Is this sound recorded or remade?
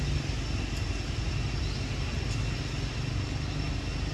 recorded